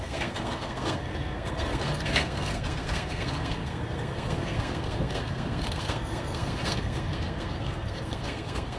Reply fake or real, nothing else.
fake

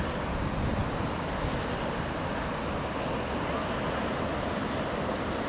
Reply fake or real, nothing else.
real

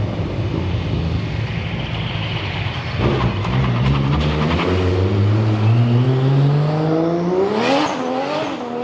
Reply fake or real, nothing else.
real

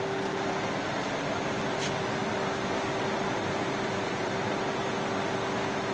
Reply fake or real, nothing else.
real